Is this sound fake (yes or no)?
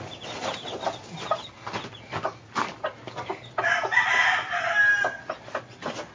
no